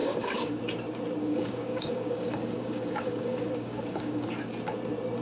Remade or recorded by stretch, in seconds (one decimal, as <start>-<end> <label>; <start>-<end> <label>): 0.0-0.6 remade; 0.6-1.2 recorded; 1.2-4.3 remade; 4.3-5.2 recorded